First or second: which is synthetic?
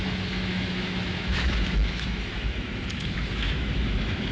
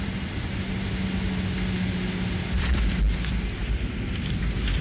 first